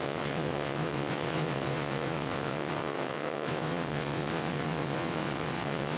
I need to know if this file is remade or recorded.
remade